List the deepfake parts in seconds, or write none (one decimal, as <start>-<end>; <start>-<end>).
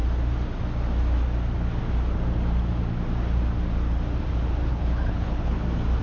4.7-5.6